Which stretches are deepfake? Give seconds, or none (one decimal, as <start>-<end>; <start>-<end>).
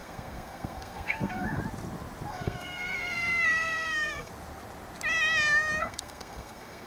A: 0.0-1.6; 2.3-4.3; 5.8-6.9